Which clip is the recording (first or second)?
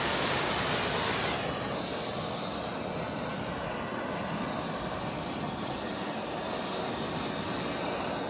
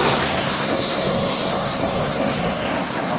first